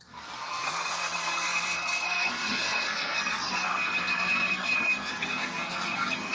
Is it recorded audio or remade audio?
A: remade